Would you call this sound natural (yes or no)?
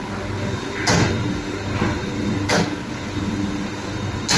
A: yes